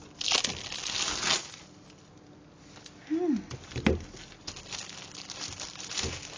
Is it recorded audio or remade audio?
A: recorded